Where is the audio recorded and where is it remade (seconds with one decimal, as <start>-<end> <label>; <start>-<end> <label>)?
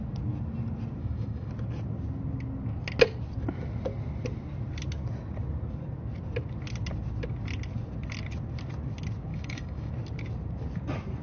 0.0-1.0 recorded; 1.0-1.5 remade; 1.5-9.3 recorded; 9.3-9.9 remade; 9.9-11.2 recorded